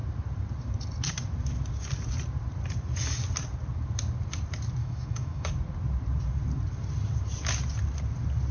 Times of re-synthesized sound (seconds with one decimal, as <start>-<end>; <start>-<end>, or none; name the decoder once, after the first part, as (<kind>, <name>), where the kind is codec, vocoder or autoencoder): 4.8-5.5 (autoencoder, DAC-VAE)

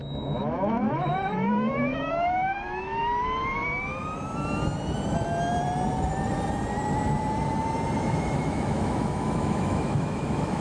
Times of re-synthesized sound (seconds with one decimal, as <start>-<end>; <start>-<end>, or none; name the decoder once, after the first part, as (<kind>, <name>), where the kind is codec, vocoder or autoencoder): 0.0-3.0 (autoencoder, DAC-VAE); 8.0-10.6

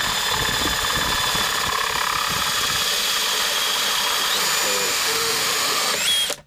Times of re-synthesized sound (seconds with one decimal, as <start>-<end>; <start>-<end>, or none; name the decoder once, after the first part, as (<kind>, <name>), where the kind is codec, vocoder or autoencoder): 4.9-5.8 (autoencoder, DAC-VAE)